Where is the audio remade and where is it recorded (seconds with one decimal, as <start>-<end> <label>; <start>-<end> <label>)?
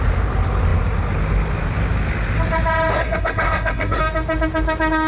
0.0-2.9 recorded; 2.9-4.0 remade; 4.0-5.1 recorded